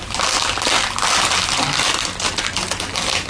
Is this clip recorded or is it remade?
recorded